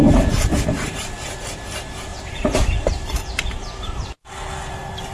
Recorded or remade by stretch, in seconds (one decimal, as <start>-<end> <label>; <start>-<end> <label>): 0.0-0.5 recorded; 0.5-1.1 remade; 1.1-2.1 recorded; 2.1-4.3 remade; 4.3-5.1 recorded